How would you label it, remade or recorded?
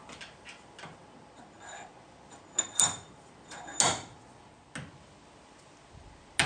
recorded